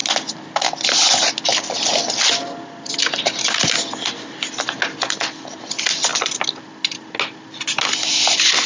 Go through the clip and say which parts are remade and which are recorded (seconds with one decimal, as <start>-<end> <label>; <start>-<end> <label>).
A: 0.0-6.1 recorded; 6.1-6.7 remade; 6.7-8.7 recorded